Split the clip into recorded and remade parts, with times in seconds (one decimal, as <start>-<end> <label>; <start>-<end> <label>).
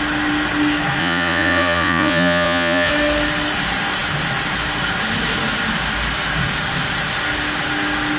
0.0-1.0 recorded; 1.0-2.9 remade; 2.9-8.2 recorded